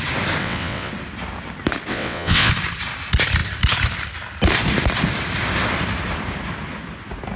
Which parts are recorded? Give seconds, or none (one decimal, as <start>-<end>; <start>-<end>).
0.0-0.4; 0.9-1.9; 2.5-7.4

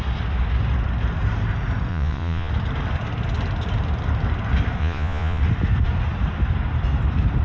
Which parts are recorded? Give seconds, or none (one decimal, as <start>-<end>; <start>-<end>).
0.0-1.9; 2.5-4.8; 5.4-7.4

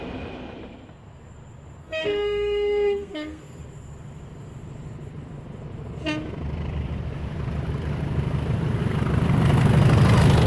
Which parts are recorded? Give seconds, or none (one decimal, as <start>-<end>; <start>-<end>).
0.0-1.8; 3.6-10.5